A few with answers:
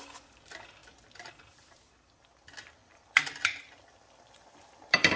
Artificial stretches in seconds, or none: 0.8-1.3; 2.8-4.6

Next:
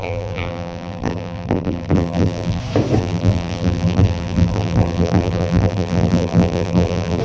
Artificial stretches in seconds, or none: 0.0-2.6; 3.0-7.2

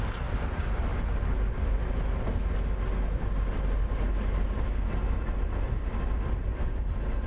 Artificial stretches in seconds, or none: 0.0-0.9; 5.3-7.3